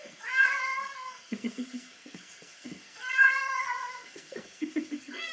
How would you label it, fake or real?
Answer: fake